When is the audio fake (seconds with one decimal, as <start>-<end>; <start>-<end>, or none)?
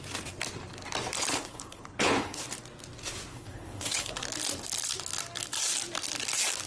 1.3-2.4; 3.3-4.1